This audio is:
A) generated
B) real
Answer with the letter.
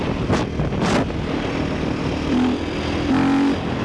B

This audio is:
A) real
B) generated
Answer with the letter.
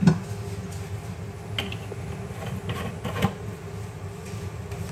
A